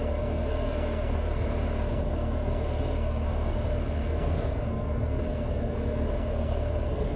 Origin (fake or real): fake